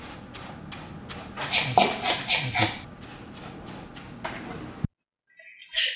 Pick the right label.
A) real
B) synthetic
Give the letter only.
A